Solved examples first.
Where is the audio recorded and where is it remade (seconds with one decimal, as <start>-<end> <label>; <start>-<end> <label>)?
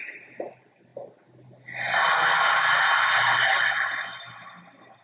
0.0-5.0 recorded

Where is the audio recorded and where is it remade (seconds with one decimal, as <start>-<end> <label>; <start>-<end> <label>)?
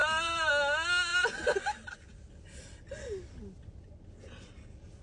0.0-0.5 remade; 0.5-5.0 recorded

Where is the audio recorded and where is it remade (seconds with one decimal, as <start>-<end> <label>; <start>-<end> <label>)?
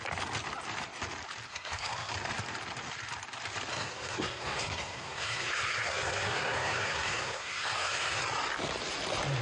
0.0-1.5 recorded; 1.5-2.1 remade; 2.1-3.7 recorded; 3.7-8.2 remade; 8.2-9.4 recorded